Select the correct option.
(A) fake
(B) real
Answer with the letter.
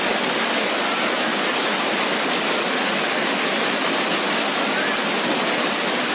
B